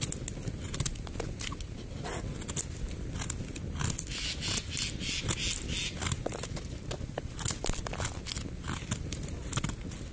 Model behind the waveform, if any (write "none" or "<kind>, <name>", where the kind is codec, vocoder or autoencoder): none